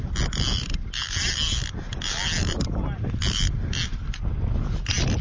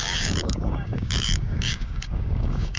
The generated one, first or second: second